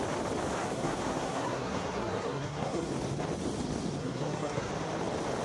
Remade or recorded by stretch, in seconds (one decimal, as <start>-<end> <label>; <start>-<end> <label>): 0.0-0.6 recorded; 0.6-2.9 remade; 2.9-4.0 recorded; 4.0-4.7 remade; 4.7-5.4 recorded